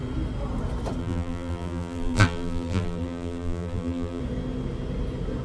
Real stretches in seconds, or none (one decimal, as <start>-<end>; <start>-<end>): 0.0-1.0; 4.2-5.4